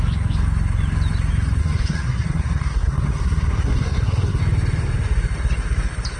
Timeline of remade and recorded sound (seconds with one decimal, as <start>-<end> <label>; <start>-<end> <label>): 0.0-1.6 recorded; 1.6-4.4 remade; 4.4-6.2 recorded